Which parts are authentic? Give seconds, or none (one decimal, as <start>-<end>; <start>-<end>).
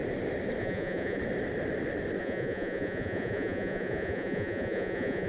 0.0-0.6; 1.2-2.2